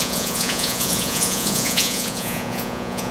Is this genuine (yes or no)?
no